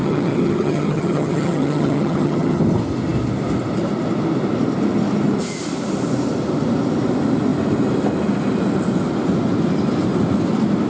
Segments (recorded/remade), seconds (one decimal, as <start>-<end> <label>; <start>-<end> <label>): 0.0-2.6 remade; 2.6-10.9 recorded